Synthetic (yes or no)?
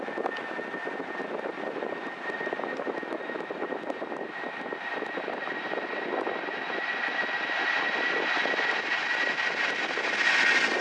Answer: no